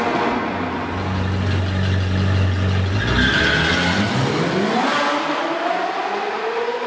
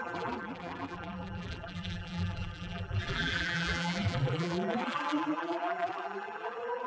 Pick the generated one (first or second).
second